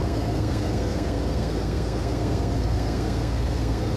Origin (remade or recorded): remade